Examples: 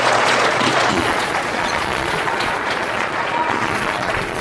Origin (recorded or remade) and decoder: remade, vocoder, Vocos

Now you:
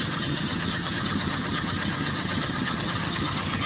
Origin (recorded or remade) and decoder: remade, vocoder, HiFi-GAN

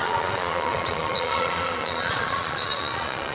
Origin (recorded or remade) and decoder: remade, vocoder, Vocos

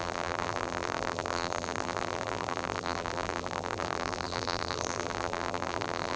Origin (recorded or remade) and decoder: remade, vocoder, BigVGAN v2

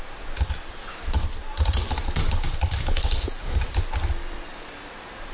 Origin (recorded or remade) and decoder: recorded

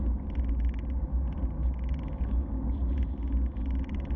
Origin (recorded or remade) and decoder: recorded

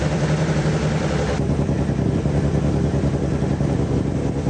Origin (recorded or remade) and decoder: remade, vocoder, BigVGAN v2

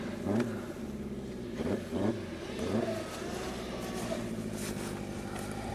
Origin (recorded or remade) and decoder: recorded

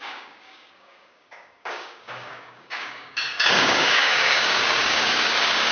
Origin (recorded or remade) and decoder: remade, codec, DAC